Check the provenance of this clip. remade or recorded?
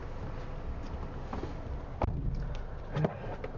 recorded